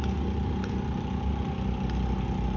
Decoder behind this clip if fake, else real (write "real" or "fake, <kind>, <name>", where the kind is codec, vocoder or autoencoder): real